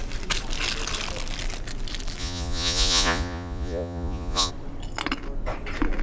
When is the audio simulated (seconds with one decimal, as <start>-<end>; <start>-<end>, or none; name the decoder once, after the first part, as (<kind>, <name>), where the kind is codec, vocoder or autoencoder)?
2.2-4.5 (vocoder, Vocos)